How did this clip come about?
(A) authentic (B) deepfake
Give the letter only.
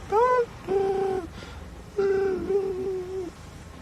A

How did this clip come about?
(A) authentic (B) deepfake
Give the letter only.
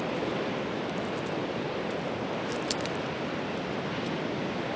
A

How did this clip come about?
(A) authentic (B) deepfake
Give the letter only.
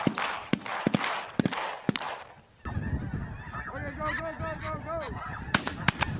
A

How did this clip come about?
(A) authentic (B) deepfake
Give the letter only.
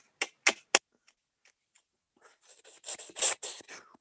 A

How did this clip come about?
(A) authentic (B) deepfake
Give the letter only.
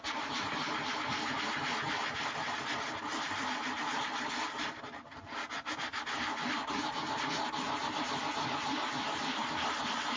A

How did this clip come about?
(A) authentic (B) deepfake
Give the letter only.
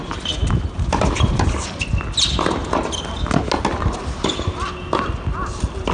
A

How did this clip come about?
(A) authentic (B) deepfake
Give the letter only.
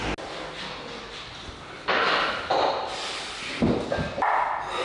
A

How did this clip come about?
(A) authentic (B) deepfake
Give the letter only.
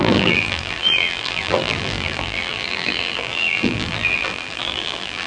B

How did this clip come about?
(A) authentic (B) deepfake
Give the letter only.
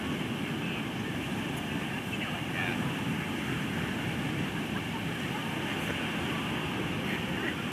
A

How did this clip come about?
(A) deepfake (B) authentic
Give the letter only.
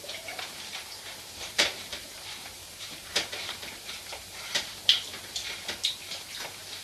A